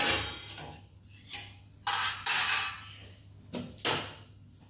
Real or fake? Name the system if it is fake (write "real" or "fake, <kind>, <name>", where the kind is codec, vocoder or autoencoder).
real